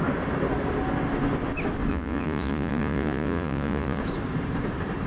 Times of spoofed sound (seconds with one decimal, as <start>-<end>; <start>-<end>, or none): 1.9-4.0